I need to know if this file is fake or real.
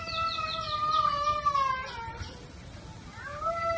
real